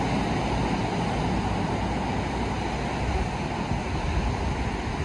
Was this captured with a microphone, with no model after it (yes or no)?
yes